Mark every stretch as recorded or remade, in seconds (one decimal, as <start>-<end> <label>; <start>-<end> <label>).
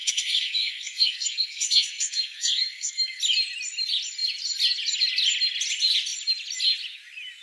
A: 0.0-3.2 remade; 3.2-7.4 recorded